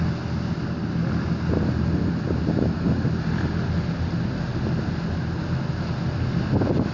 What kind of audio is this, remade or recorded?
recorded